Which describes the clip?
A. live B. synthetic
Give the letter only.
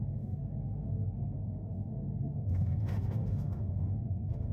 B